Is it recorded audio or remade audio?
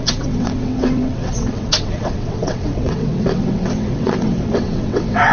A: remade